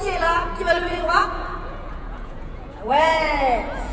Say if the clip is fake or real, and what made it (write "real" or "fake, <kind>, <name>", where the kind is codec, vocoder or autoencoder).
fake, vocoder, Vocos